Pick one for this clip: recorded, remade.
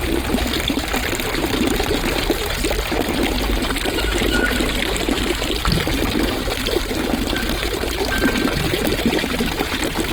recorded